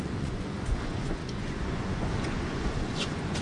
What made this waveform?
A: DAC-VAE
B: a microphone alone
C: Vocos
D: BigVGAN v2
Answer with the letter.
C